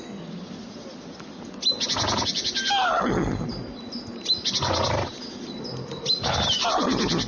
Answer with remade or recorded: recorded